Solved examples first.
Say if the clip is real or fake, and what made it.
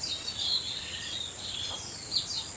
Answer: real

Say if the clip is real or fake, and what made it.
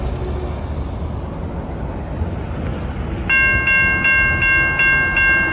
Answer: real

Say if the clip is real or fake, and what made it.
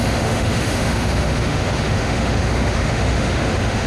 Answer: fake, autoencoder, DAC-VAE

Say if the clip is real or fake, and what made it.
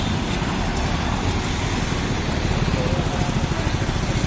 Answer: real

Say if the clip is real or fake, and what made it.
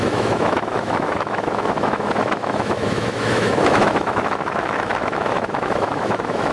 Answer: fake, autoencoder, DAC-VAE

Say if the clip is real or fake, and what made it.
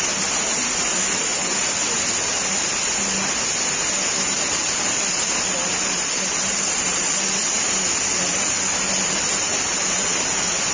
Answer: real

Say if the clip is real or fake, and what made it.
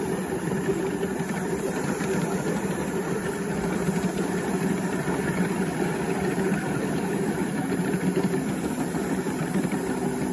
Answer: fake, vocoder, BigVGAN v2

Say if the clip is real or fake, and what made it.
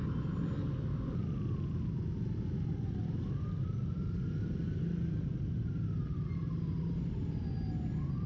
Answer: real